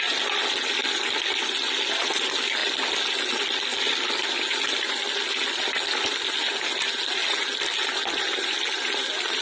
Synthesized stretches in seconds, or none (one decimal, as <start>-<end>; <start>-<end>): none